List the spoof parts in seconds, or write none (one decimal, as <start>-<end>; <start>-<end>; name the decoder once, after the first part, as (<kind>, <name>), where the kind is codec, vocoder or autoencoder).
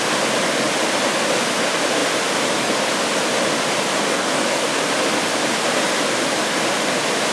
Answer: 4.0-4.8 (codec, DAC)